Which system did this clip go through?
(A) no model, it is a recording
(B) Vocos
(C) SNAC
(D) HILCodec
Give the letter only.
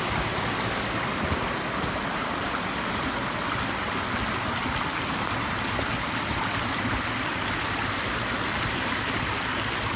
A